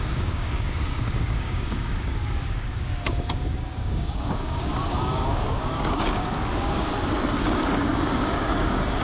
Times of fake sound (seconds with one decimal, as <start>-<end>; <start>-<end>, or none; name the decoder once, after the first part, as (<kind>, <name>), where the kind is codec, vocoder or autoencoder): 0.0-6.9 (codec, DAC); 7.4-9.0